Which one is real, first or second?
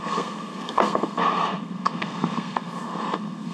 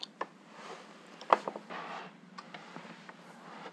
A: second